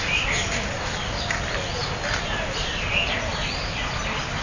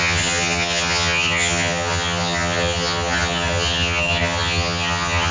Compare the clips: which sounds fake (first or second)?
second